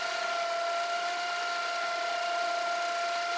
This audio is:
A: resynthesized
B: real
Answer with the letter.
B